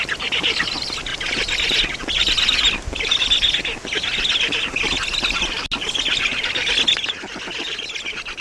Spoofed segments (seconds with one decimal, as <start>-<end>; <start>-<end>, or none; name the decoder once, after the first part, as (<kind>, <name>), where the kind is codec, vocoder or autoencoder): none

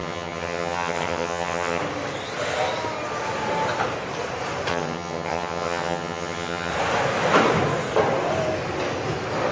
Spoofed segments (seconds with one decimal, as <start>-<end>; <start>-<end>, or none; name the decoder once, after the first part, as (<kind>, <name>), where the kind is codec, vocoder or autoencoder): 0.0-1.8 (vocoder, HiFi-GAN); 4.7-6.7